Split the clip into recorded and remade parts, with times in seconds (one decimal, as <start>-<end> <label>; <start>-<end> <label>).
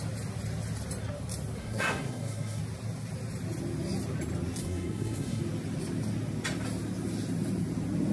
0.0-1.6 recorded; 1.6-2.6 remade; 2.6-4.6 recorded; 4.6-5.4 remade; 5.4-8.1 recorded